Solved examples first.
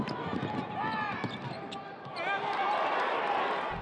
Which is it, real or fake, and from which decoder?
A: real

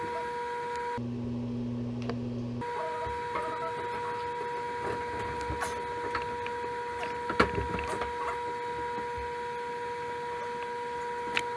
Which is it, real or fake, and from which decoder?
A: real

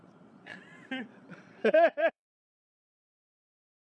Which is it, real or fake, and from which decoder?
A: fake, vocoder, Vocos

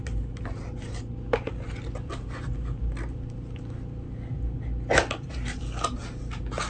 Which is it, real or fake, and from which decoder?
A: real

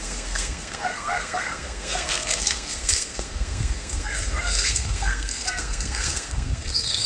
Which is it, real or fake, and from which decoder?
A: fake, codec, SNAC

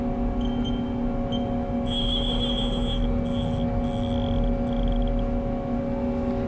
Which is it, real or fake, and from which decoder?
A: real